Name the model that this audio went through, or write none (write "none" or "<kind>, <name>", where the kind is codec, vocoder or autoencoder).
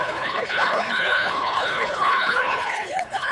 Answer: codec, HILCodec